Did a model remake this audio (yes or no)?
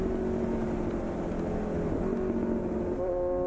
no